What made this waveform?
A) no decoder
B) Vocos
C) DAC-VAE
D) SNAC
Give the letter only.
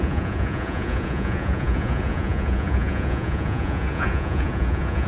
B